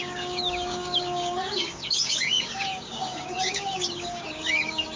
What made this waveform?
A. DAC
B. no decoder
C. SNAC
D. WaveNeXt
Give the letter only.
A